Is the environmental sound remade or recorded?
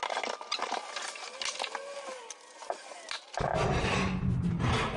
recorded